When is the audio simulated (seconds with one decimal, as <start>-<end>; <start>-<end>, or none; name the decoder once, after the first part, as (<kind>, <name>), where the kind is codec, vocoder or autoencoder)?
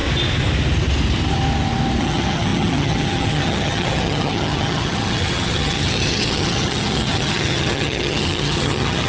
2.0-9.1 (vocoder, HiFi-GAN)